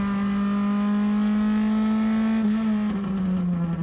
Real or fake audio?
real